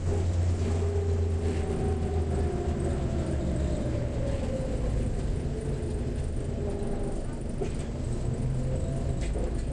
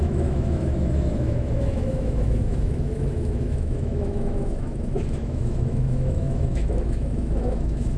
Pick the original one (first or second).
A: first